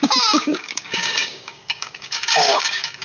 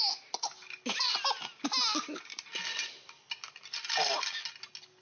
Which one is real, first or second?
second